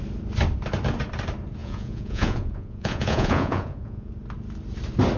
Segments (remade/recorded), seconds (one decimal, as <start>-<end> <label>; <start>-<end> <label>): 0.0-1.6 recorded; 1.6-4.1 remade; 4.1-5.2 recorded